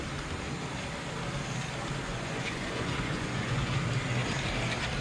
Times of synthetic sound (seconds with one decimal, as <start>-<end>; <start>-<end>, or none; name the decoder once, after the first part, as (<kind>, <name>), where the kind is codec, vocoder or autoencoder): 2.1-3.7 (vocoder, Vocos)